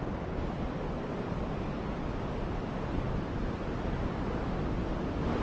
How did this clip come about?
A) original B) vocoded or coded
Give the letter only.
A